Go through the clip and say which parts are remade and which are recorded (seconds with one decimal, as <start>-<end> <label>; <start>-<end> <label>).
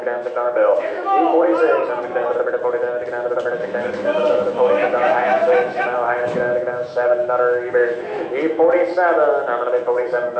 0.0-1.5 remade; 1.5-3.5 recorded; 3.5-10.4 remade